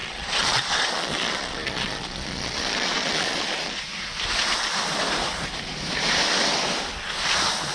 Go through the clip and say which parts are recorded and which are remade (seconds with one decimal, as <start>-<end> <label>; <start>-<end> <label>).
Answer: 0.0-3.8 remade; 3.8-7.7 recorded